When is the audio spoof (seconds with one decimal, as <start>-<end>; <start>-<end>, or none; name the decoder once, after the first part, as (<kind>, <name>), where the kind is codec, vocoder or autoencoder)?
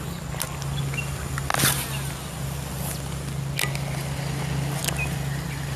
1.5-2.1 (vocoder, BigVGAN v2)